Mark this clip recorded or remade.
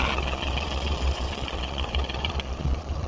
remade